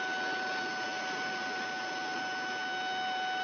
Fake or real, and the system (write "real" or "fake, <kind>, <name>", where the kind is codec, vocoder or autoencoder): real